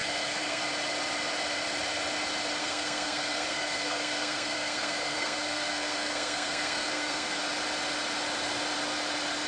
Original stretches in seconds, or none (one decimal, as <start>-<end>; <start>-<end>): 0.6-2.6; 7.4-9.5